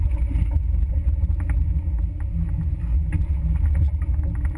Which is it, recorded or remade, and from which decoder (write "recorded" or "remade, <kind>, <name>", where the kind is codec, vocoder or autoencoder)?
recorded